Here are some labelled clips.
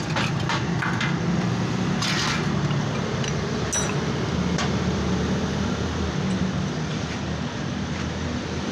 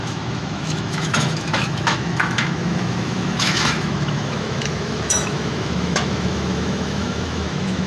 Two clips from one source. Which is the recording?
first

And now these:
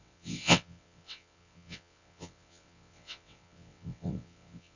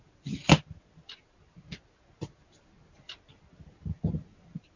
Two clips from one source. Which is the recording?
second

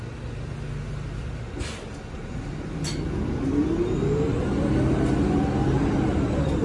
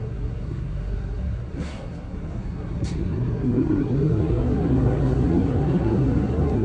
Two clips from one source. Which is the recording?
first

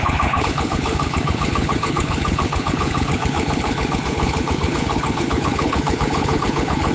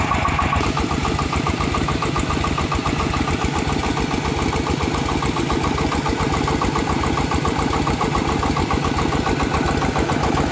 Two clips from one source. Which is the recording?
second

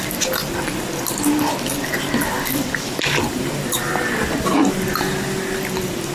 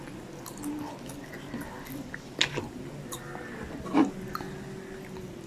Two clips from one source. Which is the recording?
second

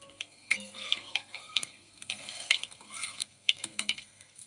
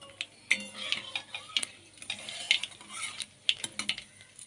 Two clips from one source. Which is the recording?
second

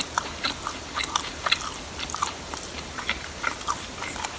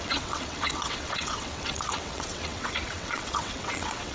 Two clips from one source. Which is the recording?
first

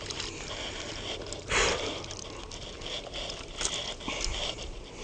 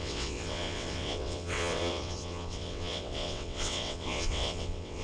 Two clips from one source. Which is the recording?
first